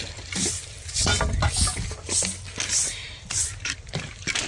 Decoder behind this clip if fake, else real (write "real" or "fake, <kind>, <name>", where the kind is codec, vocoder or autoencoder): real